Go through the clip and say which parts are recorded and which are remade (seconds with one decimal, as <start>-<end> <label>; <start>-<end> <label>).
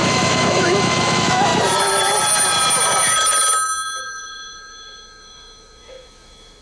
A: 0.0-1.5 remade; 1.5-4.0 recorded; 4.0-6.6 remade